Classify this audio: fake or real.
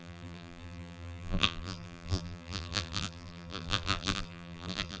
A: fake